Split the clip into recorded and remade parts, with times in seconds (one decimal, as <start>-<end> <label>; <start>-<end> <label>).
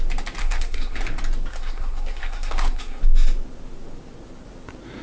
0.0-0.4 recorded; 0.4-1.0 remade; 1.0-1.5 recorded; 1.5-3.0 remade; 3.0-5.0 recorded